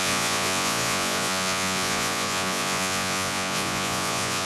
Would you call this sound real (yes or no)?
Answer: no